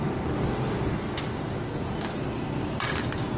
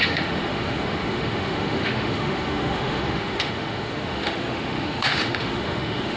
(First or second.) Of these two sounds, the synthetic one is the second